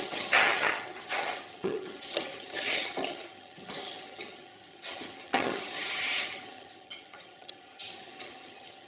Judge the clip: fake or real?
fake